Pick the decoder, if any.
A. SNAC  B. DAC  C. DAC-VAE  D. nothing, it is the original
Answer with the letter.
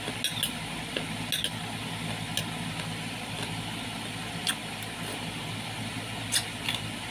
D